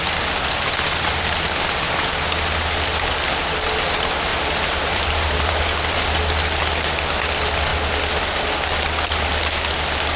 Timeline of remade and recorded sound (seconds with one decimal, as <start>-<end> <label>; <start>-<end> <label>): 0.0-4.3 recorded; 4.3-6.0 remade; 6.0-10.2 recorded